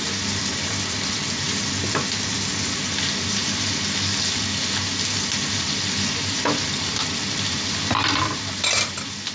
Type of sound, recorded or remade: recorded